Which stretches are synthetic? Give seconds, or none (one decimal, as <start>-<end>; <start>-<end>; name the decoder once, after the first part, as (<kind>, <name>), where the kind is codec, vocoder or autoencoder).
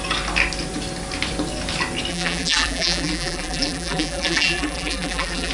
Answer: 2.1-5.5 (vocoder, BigVGAN v2)